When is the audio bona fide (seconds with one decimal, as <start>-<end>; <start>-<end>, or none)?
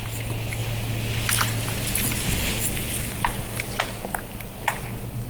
0.0-5.3